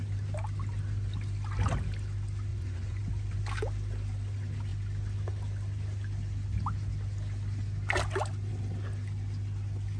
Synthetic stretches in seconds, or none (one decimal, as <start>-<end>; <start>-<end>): 2.5-3.0